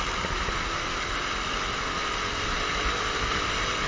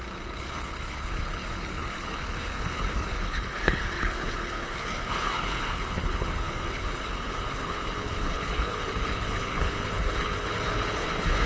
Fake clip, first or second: second